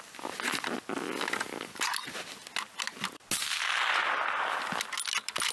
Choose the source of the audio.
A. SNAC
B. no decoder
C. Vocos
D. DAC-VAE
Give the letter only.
B